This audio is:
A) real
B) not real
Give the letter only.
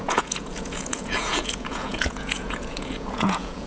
B